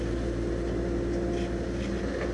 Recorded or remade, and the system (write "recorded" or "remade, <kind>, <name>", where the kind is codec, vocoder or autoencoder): recorded